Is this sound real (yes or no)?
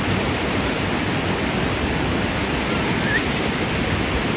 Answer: yes